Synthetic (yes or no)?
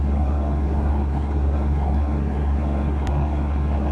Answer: yes